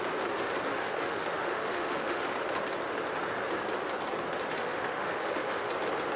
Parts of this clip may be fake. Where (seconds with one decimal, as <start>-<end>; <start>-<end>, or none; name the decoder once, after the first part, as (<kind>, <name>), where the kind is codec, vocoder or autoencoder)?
0.7-2.2 (autoencoder, DAC-VAE); 4.6-5.7